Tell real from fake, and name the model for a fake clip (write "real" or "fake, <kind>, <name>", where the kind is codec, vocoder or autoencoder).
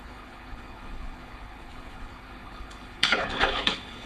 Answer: fake, codec, HILCodec